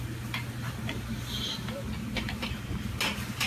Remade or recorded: recorded